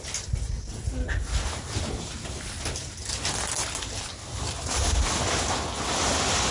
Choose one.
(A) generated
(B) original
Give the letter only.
B